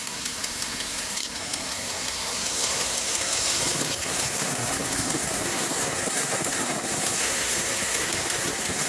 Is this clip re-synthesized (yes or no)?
yes